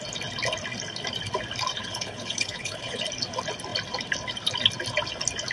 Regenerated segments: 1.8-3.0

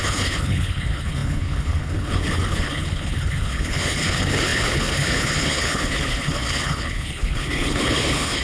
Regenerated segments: 0.0-8.4

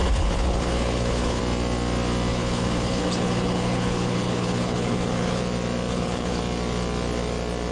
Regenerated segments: 0.0-1.4; 2.3-5.4; 5.9-6.4